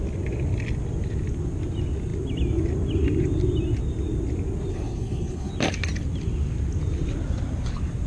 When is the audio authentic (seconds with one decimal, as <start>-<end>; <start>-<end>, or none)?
0.0-4.7; 5.5-8.1